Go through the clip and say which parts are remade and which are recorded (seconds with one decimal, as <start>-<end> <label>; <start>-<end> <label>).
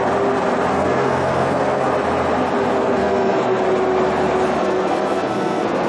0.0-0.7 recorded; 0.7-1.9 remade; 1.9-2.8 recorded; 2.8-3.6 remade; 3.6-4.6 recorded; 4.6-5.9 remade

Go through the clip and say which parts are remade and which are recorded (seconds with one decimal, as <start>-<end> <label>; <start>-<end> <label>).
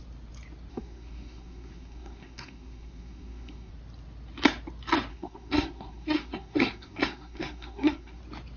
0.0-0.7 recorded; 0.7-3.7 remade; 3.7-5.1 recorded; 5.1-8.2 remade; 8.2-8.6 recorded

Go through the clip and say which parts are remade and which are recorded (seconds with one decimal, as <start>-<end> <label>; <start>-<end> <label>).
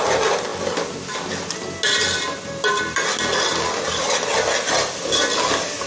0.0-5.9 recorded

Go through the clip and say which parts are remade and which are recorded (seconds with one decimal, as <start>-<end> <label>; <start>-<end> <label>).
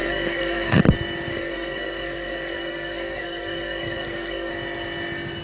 0.0-0.8 remade; 0.8-1.3 recorded; 1.3-4.5 remade; 4.5-5.4 recorded